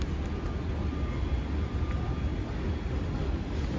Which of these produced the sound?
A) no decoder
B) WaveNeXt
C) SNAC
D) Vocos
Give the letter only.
A